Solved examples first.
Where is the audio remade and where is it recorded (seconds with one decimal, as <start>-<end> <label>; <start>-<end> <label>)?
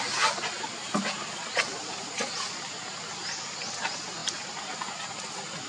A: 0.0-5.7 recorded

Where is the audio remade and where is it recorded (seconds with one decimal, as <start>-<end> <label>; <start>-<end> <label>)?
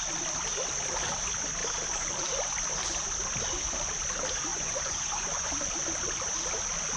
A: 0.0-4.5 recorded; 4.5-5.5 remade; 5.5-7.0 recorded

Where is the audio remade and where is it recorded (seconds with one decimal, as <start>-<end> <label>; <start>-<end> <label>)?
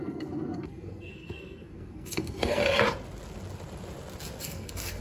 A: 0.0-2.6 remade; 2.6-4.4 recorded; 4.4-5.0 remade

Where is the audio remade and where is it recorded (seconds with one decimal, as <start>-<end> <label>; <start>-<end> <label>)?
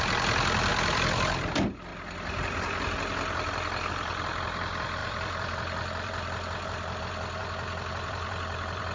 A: 0.0-1.9 remade; 1.9-3.9 recorded; 3.9-7.4 remade; 7.4-7.9 recorded; 7.9-8.9 remade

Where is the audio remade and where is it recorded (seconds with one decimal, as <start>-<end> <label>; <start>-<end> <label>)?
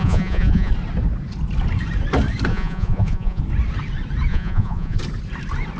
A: 0.0-0.7 remade; 0.7-2.5 recorded; 2.5-3.4 remade; 3.4-4.3 recorded; 4.3-5.0 remade; 5.0-5.8 recorded